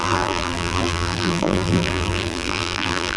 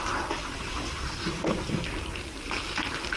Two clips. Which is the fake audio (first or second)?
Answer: first